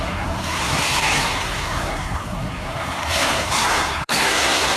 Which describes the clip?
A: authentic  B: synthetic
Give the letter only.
B